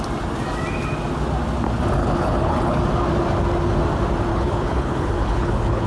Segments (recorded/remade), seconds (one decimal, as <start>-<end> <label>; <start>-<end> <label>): 0.0-2.0 recorded; 2.0-2.8 remade; 2.8-4.3 recorded; 4.3-5.9 remade